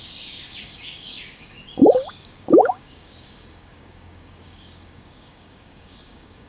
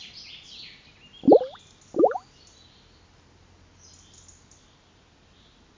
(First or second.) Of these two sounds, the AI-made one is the first